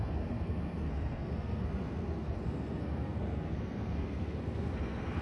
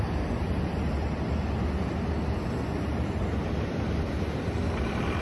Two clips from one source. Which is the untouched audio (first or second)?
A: second